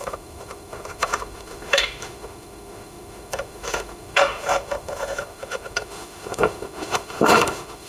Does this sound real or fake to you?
fake